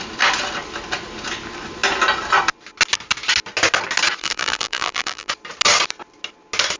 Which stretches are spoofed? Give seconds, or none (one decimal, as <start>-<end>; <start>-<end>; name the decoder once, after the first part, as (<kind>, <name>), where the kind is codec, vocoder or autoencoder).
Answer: 4.2-5.3 (vocoder, BigVGAN v2)